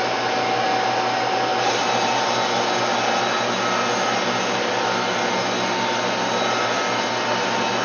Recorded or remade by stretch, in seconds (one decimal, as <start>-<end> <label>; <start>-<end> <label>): 0.0-7.8 recorded